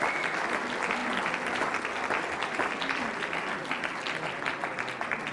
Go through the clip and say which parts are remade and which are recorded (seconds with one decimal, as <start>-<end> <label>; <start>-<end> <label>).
0.0-5.3 recorded